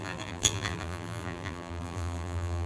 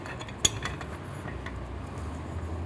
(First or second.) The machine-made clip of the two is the first